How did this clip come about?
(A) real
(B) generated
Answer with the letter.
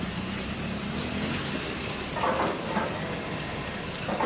A